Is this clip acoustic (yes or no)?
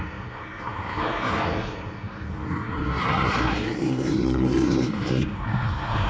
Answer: no